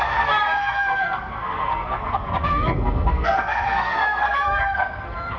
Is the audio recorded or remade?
remade